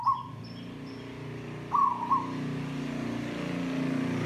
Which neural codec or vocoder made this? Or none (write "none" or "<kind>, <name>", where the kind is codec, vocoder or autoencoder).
none